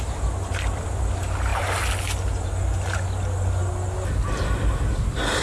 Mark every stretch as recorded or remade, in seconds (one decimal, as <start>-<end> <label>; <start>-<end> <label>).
0.0-5.4 recorded